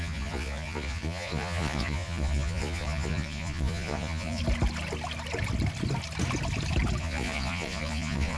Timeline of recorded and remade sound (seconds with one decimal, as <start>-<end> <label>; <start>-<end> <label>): 0.0-4.4 remade; 4.4-7.0 recorded; 7.0-8.4 remade

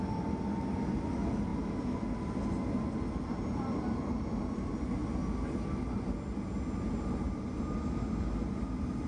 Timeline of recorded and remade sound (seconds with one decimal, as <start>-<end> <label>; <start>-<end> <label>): 0.0-9.1 recorded